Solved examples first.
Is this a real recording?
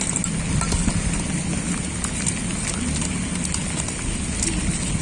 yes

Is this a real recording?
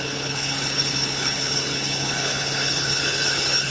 no